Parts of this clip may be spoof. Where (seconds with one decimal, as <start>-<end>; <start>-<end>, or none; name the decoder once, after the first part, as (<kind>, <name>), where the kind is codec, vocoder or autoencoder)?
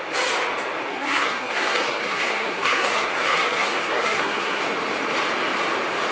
0.9-4.6 (codec, SNAC)